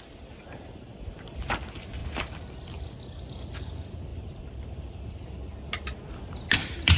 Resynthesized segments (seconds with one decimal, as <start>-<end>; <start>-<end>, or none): 2.0-2.5; 4.1-7.0